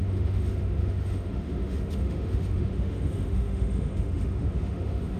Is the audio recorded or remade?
remade